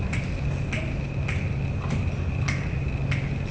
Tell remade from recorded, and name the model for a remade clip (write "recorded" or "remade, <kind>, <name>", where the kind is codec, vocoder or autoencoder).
recorded